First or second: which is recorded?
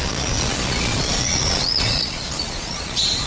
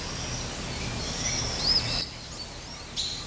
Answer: second